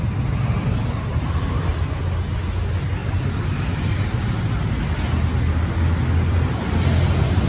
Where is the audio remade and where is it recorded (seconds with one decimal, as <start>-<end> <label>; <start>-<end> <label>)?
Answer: 0.0-1.1 recorded; 1.1-1.7 remade; 1.7-3.0 recorded; 3.0-4.3 remade; 4.3-7.5 recorded